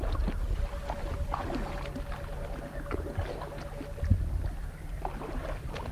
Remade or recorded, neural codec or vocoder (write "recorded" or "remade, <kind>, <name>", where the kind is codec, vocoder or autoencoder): recorded